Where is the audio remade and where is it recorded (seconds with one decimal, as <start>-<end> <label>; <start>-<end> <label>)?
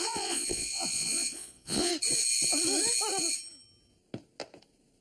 0.0-1.9 remade; 1.9-5.0 recorded